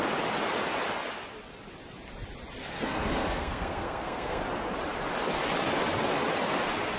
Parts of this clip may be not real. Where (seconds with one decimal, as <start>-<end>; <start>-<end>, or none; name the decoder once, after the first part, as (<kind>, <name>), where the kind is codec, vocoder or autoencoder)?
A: 2.6-4.4 (codec, SNAC)